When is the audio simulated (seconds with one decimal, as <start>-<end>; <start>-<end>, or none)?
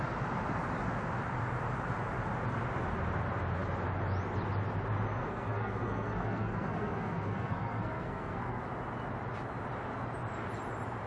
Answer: 5.2-8.6